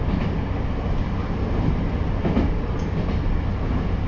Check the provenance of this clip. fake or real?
real